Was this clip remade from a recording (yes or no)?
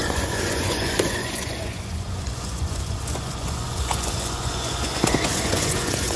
yes